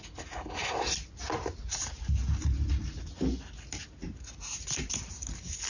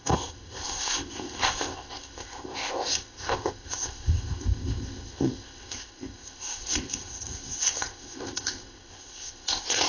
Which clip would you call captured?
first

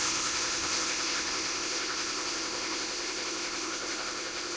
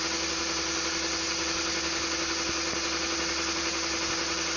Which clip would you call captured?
second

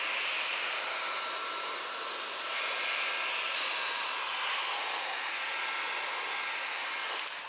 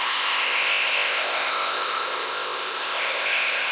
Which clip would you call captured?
first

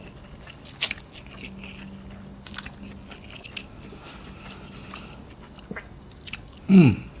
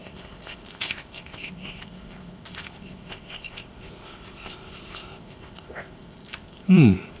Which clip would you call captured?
first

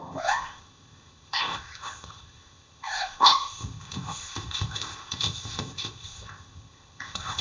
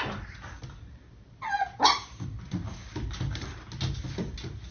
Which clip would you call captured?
second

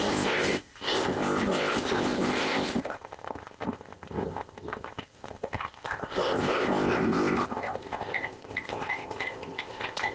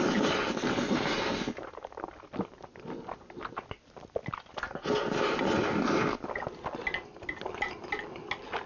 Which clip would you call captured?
second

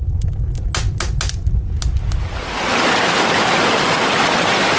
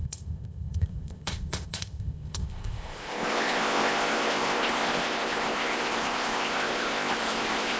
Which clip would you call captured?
first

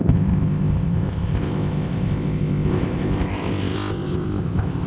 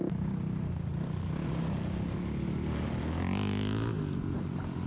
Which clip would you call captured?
second